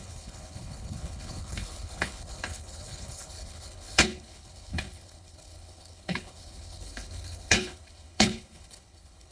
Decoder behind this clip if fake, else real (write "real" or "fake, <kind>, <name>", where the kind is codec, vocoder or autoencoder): fake, codec, HILCodec